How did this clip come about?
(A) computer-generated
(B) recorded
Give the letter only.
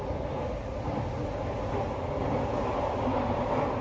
B